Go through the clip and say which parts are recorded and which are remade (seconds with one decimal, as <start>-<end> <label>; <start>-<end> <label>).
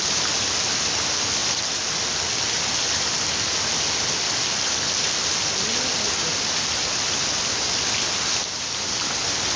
0.0-9.6 recorded